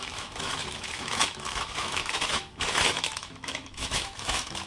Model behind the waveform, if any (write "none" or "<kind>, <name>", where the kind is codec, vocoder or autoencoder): autoencoder, DAC-VAE